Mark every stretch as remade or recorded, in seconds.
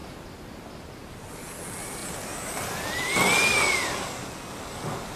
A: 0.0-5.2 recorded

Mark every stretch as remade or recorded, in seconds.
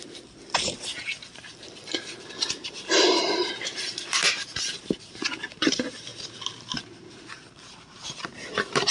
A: 0.0-8.9 remade